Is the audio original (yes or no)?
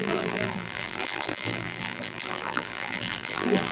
no